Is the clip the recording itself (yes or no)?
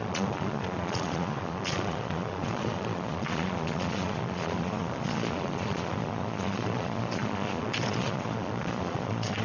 no